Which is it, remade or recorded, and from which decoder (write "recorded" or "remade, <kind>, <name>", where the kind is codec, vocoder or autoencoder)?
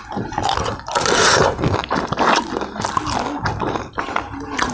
recorded